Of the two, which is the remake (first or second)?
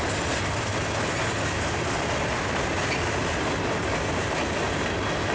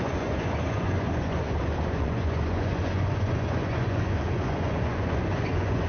second